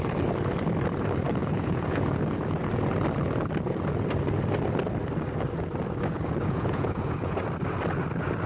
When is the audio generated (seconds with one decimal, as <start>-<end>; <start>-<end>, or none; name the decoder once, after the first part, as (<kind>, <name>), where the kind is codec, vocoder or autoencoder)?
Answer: 1.4-2.0 (vocoder, Vocos); 6.4-7.4

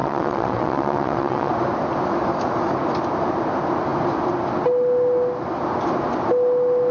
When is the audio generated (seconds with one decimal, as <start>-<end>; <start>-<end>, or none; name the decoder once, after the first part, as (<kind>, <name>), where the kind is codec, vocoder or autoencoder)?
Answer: 0.0-1.5 (vocoder, WaveNeXt)

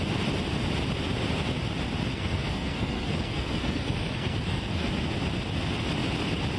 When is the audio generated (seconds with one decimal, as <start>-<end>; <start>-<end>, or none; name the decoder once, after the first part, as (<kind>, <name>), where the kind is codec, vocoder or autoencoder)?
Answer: 2.1-4.9 (codec, SNAC)

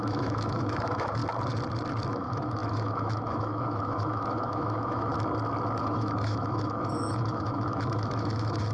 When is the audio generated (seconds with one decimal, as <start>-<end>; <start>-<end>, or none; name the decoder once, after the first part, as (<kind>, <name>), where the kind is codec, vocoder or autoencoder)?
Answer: 0.0-1.2 (autoencoder, DAC-VAE); 2.1-5.1; 5.8-8.7

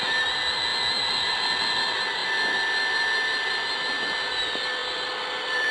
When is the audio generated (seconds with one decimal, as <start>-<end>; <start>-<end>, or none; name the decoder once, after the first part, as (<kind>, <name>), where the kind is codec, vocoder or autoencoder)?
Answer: none

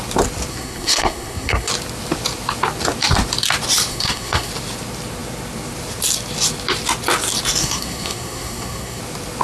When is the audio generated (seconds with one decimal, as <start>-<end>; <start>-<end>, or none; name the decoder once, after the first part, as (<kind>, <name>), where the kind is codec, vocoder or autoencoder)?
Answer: 0.5-1.7 (codec, SNAC); 3.9-4.5; 7.6-9.0

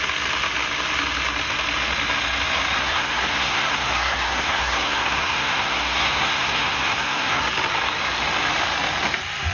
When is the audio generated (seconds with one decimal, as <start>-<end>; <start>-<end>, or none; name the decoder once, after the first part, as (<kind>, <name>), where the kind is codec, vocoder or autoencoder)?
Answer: 2.8-7.4 (codec, SNAC)